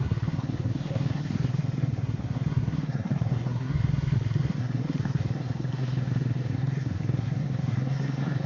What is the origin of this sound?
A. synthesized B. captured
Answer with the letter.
A